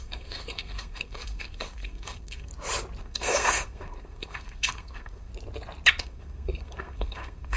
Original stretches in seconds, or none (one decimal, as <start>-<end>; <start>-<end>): 2.5-3.0; 5.3-6.0